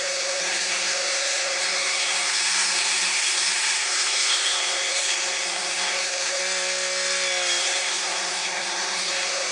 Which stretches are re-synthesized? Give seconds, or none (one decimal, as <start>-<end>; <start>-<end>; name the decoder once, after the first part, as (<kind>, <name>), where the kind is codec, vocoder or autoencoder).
0.0-6.4 (codec, SNAC); 7.6-9.5